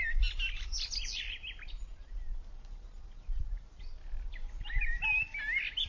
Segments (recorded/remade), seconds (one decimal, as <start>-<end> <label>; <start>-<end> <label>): 0.0-5.9 recorded